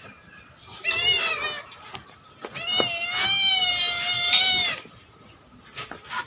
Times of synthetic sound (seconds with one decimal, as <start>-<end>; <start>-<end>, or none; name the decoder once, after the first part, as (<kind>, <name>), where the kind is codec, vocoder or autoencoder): none